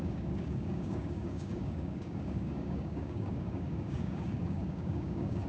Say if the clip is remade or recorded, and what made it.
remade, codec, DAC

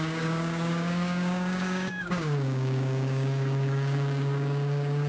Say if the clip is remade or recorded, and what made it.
remade, codec, DAC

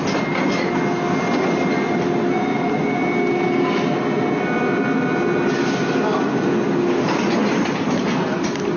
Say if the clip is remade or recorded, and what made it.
recorded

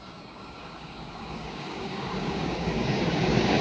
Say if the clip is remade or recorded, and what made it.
remade, codec, DAC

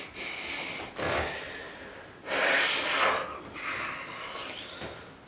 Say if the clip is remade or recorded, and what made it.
recorded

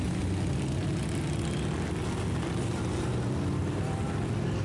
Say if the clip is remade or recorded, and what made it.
recorded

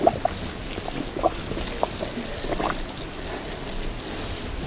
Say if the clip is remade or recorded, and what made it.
recorded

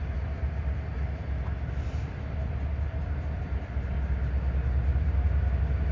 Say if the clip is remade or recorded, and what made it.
recorded